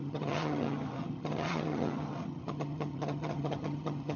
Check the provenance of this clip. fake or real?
fake